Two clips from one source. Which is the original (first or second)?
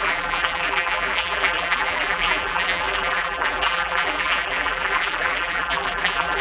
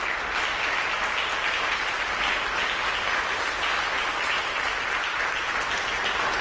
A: second